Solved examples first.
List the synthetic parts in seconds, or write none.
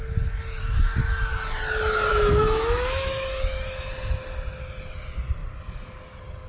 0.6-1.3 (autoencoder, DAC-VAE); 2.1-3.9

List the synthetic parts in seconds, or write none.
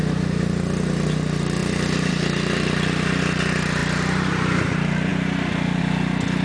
none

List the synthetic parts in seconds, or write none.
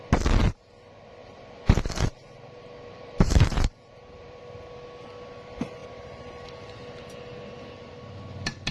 1.2-4.4 (vocoder, BigVGAN v2)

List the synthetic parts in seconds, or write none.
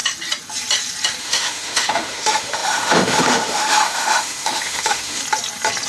1.2-5.2 (autoencoder, DAC-VAE)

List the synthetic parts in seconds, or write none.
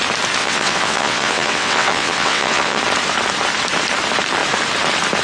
0.4-2.8 (vocoder, WaveNeXt)